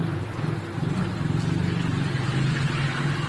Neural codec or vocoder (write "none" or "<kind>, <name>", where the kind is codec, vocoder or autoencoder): none